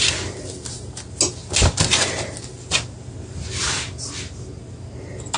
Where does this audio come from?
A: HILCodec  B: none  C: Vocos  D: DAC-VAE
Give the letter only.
B